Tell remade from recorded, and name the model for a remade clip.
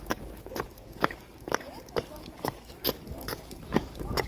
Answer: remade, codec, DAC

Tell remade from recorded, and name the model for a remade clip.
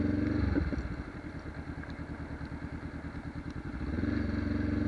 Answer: recorded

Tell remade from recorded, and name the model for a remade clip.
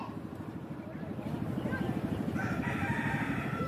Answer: remade, vocoder, BigVGAN v2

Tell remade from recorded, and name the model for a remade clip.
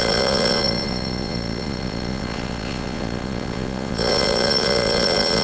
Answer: remade, vocoder, Vocos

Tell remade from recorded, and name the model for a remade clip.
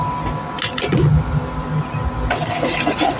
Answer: recorded